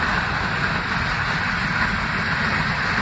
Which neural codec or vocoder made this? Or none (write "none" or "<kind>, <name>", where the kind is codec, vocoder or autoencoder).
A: none